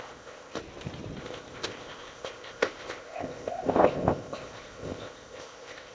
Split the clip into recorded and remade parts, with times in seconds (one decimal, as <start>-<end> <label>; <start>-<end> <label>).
0.0-0.6 remade; 0.6-1.2 recorded; 1.2-5.9 remade